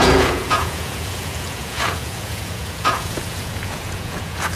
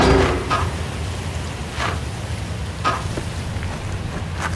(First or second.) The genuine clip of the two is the second